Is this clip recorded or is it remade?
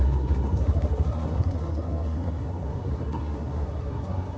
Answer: remade